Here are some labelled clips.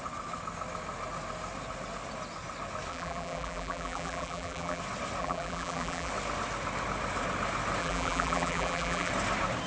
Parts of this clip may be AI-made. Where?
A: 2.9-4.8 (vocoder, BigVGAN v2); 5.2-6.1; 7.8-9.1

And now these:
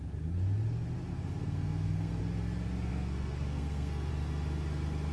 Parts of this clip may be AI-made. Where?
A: 1.1-2.2 (codec, SNAC); 2.9-4.1

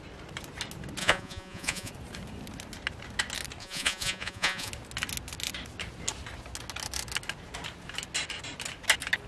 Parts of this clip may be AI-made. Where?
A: 1.0-1.9 (vocoder, Vocos); 3.6-4.7

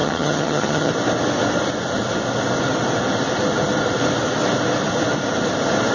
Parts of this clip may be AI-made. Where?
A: 0.0-0.9 (vocoder, HiFi-GAN)